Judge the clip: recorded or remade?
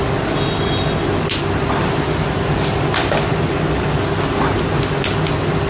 recorded